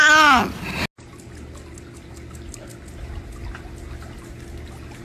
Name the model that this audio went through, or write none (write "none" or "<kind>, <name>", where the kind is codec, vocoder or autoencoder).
none